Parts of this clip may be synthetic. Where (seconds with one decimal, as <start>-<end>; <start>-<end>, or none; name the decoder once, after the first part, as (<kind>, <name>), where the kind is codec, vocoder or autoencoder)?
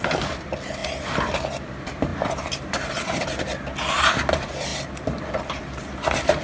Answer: 0.0-0.8 (vocoder, BigVGAN v2); 1.5-4.7; 5.4-6.4